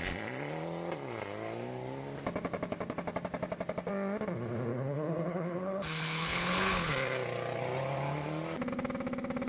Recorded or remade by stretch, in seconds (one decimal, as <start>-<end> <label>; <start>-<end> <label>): 0.0-4.7 recorded; 4.7-6.9 remade; 6.9-9.5 recorded